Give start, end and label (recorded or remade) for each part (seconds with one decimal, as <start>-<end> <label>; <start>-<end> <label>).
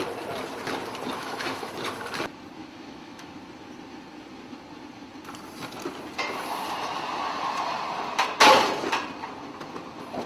0.0-1.2 recorded; 1.2-1.7 remade; 1.7-2.6 recorded; 2.6-3.3 remade; 3.3-10.3 recorded